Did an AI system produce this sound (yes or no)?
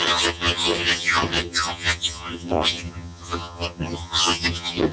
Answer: yes